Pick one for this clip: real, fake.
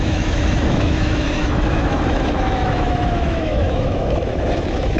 fake